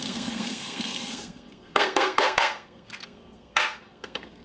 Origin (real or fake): fake